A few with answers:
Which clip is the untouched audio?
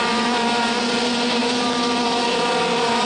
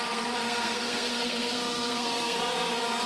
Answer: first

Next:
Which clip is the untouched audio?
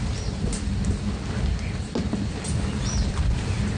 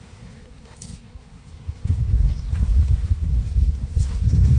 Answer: first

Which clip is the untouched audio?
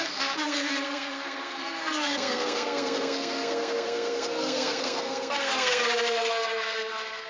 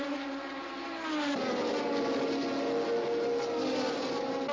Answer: second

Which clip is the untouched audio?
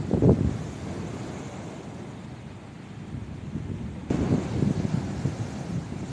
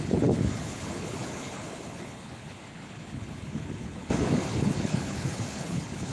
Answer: first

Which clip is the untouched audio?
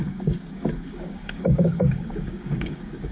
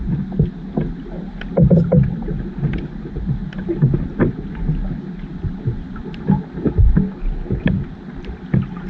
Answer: second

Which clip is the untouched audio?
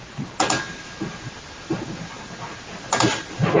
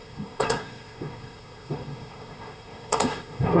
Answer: first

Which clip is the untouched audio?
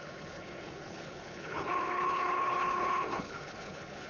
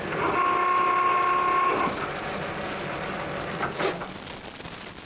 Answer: second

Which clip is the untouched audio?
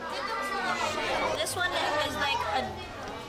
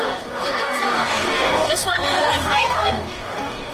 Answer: first